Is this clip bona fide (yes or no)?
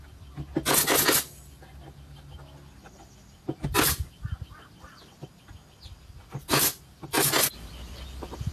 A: yes